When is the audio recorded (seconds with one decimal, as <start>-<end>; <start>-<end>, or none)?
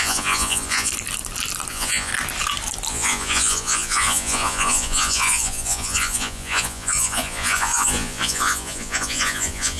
0.9-1.7; 2.1-2.9